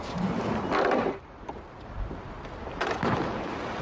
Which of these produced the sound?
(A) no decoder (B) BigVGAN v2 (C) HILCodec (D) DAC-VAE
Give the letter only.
A